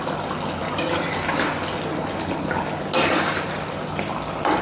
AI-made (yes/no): no